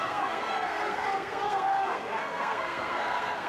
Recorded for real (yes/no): no